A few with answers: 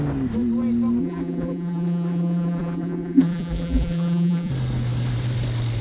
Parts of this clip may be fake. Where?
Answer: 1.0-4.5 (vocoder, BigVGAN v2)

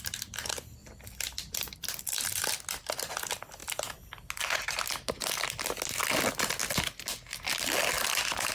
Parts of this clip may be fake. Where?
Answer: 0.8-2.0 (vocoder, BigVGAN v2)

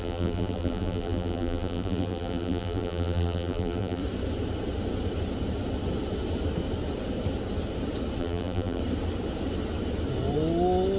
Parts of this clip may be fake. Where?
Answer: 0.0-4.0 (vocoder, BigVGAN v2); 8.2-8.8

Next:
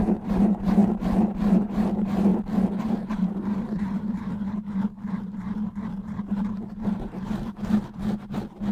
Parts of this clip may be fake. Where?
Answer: 0.0-0.8 (vocoder, BigVGAN v2); 1.6-2.3; 2.8-8.7